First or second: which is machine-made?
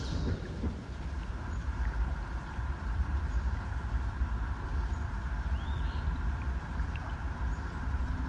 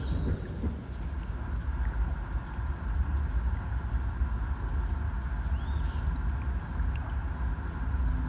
first